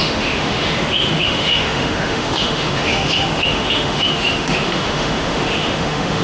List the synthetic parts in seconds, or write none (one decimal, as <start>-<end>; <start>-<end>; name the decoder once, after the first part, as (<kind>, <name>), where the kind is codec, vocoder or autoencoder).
0.0-6.2 (autoencoder, DAC-VAE)